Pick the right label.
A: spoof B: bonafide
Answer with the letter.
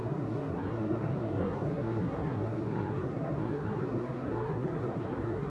A